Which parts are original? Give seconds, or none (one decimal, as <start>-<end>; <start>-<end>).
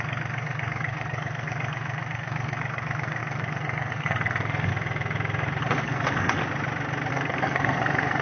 4.7-5.6; 6.4-7.1